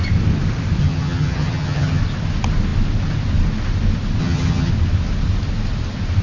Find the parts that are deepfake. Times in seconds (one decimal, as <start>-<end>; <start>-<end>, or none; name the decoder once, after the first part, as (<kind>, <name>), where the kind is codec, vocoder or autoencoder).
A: 0.8-2.0 (vocoder, HiFi-GAN); 4.2-4.7